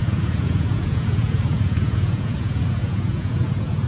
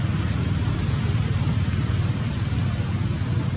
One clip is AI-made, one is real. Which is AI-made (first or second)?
first